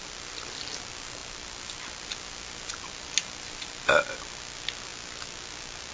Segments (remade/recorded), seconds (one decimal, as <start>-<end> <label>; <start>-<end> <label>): 0.0-5.9 recorded